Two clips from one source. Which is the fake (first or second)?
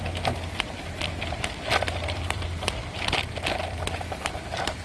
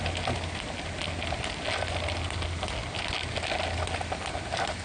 first